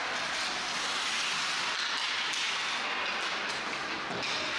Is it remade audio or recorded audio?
recorded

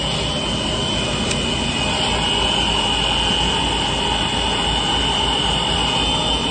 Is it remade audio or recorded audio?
recorded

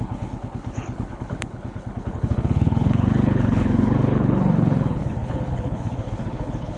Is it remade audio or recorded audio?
remade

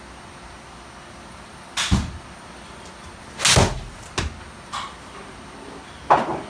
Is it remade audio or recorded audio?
recorded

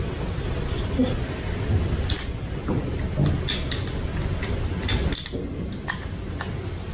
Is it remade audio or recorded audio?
recorded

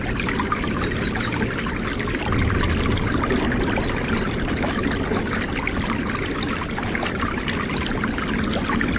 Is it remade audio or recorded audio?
recorded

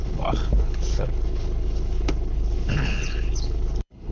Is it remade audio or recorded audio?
remade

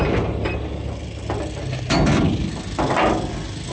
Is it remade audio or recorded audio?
recorded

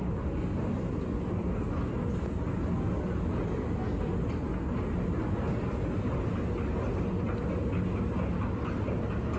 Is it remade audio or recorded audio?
recorded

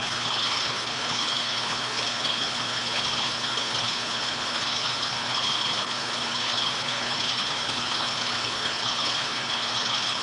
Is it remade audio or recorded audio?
remade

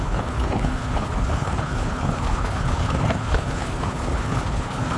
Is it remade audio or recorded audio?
remade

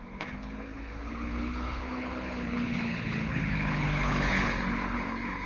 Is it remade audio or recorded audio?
remade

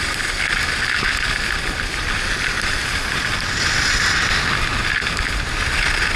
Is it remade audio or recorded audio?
recorded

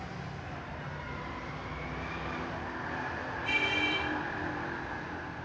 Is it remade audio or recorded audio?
recorded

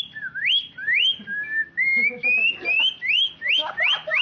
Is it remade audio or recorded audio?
recorded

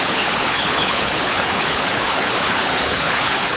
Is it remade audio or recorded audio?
remade